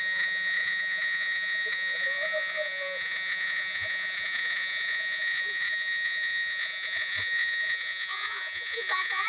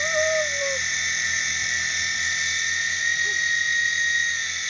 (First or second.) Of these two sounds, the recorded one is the second